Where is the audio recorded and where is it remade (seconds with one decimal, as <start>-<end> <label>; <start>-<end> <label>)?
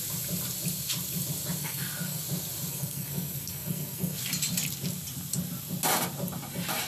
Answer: 0.0-1.6 recorded; 1.6-2.2 remade; 2.2-2.7 recorded; 2.7-4.2 remade; 4.2-6.9 recorded